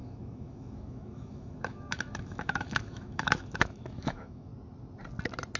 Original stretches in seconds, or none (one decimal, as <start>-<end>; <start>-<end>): 4.5-5.6